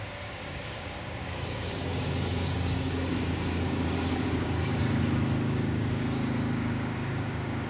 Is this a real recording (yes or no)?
no